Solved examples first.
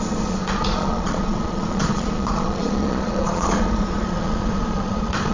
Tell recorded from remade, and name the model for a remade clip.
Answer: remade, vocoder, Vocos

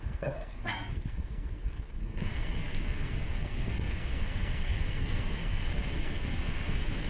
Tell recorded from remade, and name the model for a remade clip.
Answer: remade, codec, SNAC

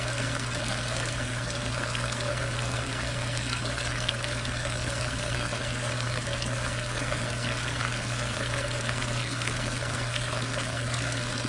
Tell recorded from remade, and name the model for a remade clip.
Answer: remade, codec, SNAC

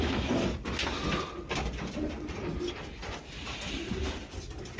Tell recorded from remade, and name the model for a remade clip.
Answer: recorded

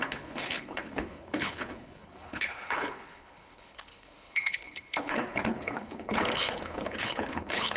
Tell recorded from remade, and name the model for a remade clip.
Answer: remade, codec, HILCodec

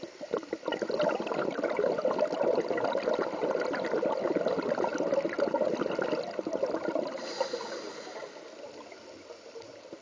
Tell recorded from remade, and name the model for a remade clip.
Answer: recorded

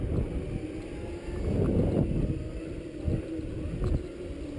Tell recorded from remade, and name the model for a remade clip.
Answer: recorded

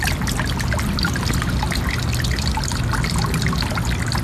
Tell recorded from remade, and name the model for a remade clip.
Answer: recorded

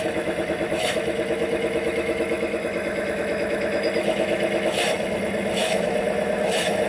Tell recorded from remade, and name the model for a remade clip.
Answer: remade, autoencoder, DAC-VAE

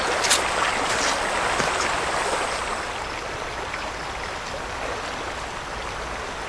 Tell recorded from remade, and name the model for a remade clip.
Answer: recorded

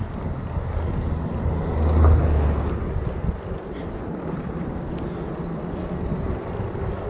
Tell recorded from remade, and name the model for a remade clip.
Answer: recorded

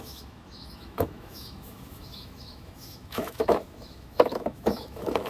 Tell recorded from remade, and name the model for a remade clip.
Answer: remade, autoencoder, DAC-VAE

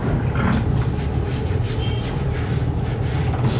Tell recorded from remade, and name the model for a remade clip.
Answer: recorded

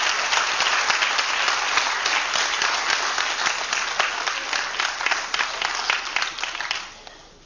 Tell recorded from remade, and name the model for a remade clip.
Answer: recorded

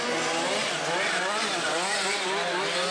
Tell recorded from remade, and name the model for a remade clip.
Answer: recorded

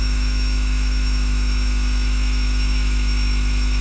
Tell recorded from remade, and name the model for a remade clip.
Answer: remade, autoencoder, DAC-VAE